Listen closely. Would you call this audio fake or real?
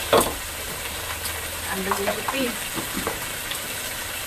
fake